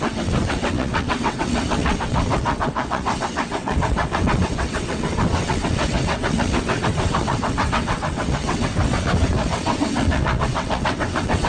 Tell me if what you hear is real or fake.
fake